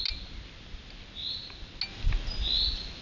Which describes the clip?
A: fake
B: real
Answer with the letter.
B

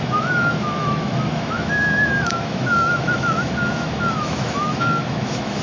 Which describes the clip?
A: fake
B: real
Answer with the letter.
A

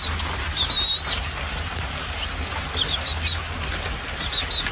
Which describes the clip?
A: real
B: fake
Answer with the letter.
A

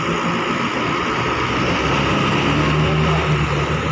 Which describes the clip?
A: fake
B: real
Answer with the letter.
B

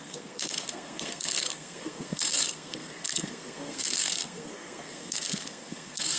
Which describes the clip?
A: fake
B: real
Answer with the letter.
A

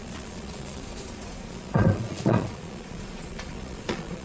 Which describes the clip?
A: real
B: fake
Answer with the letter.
B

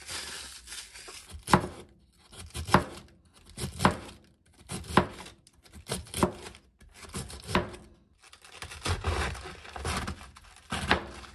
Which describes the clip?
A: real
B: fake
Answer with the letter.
A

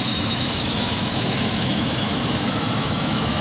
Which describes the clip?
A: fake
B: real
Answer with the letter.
A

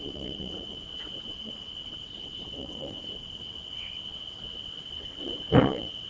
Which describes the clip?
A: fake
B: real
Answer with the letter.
A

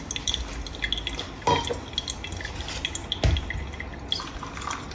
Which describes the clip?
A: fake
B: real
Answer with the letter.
B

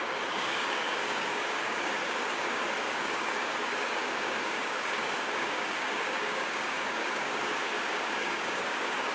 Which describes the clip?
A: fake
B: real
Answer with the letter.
A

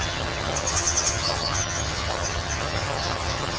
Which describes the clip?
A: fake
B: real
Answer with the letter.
A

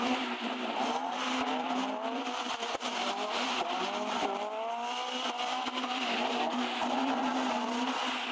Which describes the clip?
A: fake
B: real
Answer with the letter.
A